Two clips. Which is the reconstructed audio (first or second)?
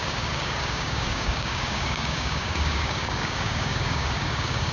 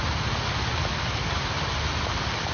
first